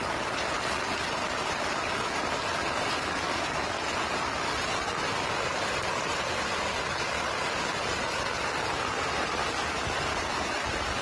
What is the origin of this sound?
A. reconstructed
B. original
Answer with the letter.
B